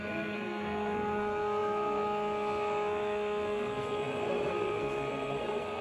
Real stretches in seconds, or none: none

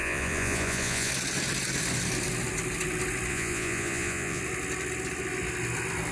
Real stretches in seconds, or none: 1.1-3.3; 4.4-6.1

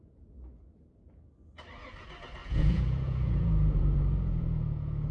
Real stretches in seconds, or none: 0.0-2.4

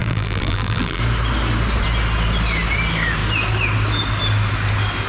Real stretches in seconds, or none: 1.0-5.1

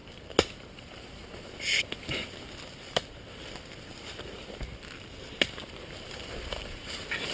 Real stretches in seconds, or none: 1.2-5.6